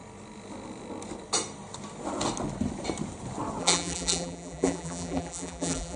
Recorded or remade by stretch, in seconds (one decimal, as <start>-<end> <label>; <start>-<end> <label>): 0.0-3.6 recorded; 3.6-6.0 remade